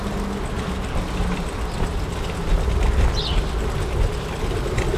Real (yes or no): yes